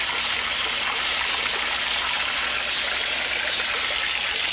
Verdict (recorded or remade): recorded